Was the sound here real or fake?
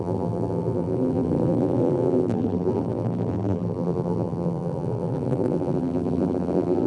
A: fake